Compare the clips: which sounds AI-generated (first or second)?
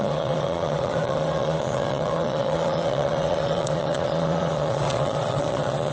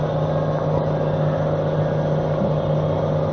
first